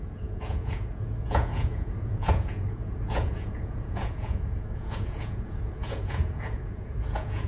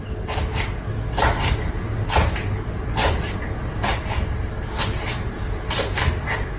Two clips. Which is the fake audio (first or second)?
first